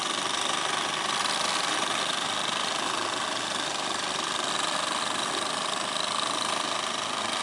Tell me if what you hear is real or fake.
fake